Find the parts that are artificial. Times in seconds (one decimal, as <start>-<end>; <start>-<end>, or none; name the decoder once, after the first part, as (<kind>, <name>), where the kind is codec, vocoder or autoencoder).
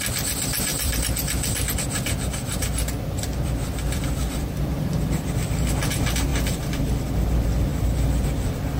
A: 0.7-5.3 (vocoder, BigVGAN v2)